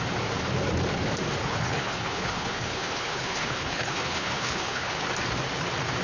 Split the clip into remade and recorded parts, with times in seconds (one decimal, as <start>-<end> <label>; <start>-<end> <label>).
0.0-1.4 recorded; 1.4-5.0 remade; 5.0-6.0 recorded